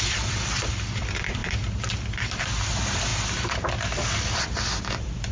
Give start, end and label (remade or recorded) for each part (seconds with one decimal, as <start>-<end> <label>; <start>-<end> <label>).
0.0-1.4 remade; 1.4-2.4 recorded; 2.4-3.1 remade; 3.1-4.4 recorded; 4.4-5.3 remade